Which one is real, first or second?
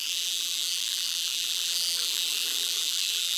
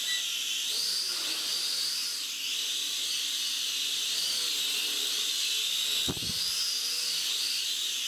second